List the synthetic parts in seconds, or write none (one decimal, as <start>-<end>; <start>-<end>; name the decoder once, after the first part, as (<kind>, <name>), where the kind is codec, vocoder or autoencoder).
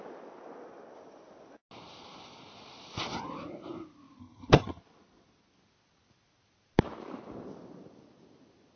4.2-4.8 (vocoder, HiFi-GAN)